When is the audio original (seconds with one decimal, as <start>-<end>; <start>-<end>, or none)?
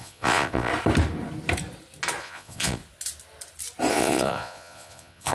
0.7-2.2; 2.8-3.9